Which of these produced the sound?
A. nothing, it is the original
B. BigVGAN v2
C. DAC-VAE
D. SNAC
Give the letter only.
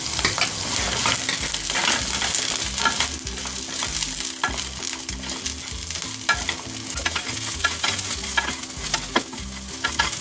A